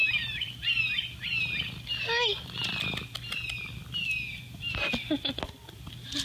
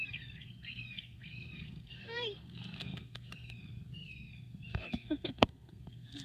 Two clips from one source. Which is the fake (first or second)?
second